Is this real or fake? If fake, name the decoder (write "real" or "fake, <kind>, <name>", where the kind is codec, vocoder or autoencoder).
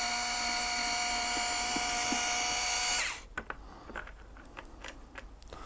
real